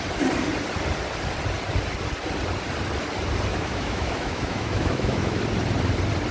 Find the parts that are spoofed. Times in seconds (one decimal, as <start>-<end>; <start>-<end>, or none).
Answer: 3.5-5.4